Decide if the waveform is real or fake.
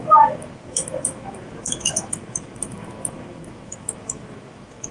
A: fake